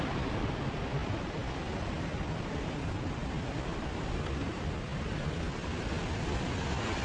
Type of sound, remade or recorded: recorded